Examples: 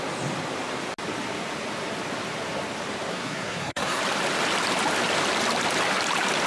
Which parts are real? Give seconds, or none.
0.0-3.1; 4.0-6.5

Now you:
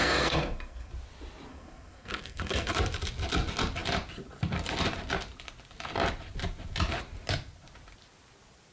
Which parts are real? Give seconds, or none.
0.9-1.5; 2.7-8.7

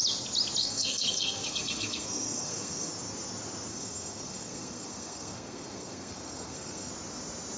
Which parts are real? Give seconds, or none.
0.0-0.6; 2.9-3.7; 6.9-7.6